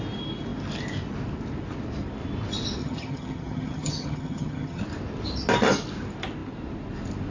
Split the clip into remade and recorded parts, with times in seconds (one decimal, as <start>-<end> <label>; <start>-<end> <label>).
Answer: 0.0-2.8 recorded; 2.8-4.8 remade; 4.8-7.3 recorded